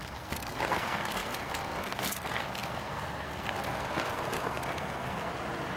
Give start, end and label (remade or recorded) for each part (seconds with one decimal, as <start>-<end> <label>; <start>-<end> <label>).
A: 0.0-5.3 remade; 5.3-5.8 recorded